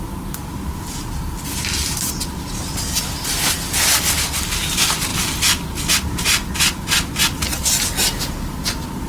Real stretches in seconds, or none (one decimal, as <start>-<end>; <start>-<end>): 0.0-9.1